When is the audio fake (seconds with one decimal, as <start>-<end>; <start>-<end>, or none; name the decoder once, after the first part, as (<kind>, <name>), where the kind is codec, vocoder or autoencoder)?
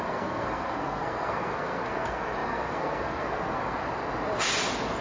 0.0-3.8 (codec, SNAC)